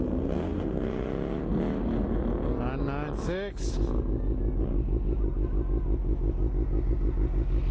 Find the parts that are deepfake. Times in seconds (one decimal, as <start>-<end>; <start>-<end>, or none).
none